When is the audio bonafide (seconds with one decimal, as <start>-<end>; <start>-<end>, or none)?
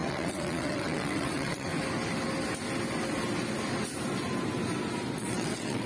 1.7-5.2